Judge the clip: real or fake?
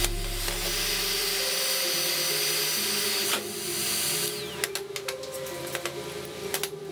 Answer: real